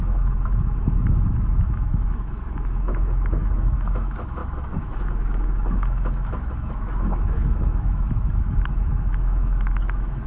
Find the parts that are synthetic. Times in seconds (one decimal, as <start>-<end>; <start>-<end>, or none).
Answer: 0.0-10.3